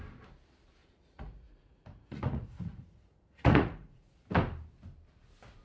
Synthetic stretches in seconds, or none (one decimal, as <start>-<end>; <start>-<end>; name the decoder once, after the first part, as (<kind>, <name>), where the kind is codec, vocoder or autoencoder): 0.8-4.2 (vocoder, Vocos)